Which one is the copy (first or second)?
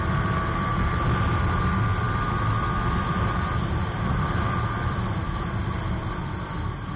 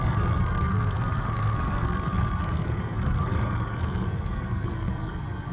second